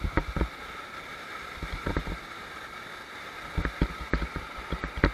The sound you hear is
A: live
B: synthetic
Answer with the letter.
A